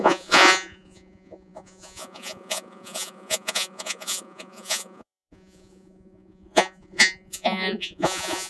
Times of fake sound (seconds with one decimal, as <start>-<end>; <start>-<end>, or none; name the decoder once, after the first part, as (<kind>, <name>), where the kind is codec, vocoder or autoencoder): 0.0-8.5 (vocoder, Vocos)